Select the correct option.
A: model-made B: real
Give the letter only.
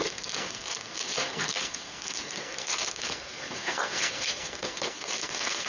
A